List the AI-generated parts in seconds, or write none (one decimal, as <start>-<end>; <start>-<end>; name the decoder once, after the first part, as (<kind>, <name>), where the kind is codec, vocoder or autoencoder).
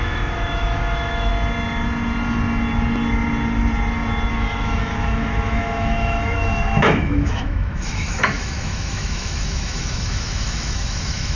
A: 0.0-1.3 (autoencoder, DAC-VAE); 4.3-11.4